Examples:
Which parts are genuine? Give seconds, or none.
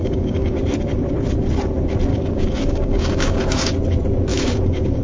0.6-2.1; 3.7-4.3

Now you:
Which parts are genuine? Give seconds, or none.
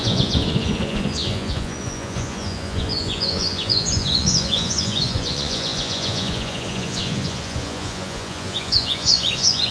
none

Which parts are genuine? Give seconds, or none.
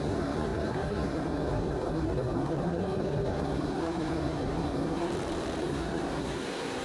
5.1-5.6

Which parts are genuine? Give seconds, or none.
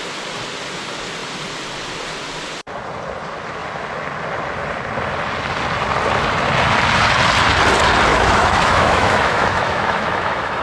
0.0-8.1